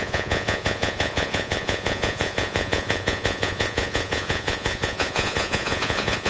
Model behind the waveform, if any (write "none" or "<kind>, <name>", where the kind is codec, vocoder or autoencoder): vocoder, Vocos